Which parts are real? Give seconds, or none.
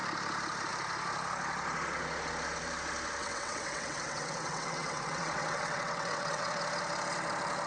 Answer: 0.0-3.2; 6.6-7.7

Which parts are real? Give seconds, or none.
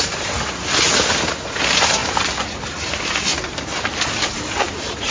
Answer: 2.0-4.3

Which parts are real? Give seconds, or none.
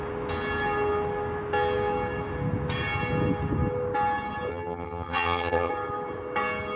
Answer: 0.0-4.5; 5.7-6.8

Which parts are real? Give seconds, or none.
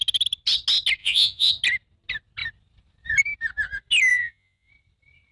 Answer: 0.0-1.0; 1.5-4.1; 4.7-5.3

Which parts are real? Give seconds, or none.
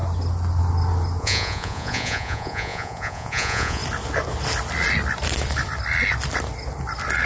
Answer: 0.0-1.2; 3.8-7.3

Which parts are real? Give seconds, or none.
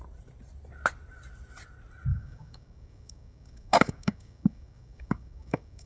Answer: 0.0-2.1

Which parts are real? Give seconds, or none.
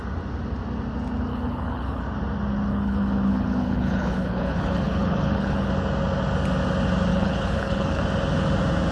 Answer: 0.0-1.3; 2.0-2.7; 5.7-7.1; 8.0-8.9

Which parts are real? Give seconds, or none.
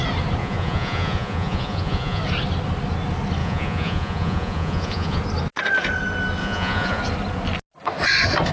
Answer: 0.0-0.4; 2.2-3.4; 5.2-6.4; 7.0-8.5